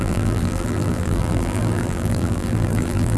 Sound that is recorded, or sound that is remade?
remade